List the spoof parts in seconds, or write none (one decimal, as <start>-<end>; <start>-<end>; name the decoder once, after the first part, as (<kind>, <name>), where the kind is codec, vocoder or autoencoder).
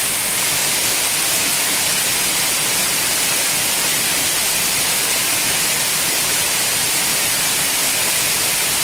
none